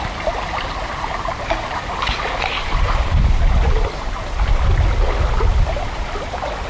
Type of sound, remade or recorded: recorded